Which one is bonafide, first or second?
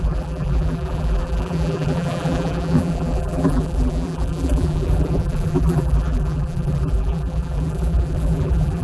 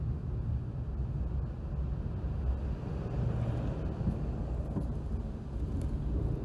second